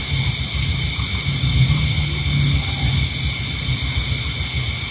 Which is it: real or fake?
real